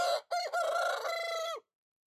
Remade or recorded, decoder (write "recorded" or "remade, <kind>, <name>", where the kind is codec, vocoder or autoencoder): recorded